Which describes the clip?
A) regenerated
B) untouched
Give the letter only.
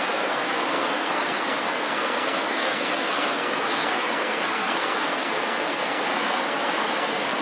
A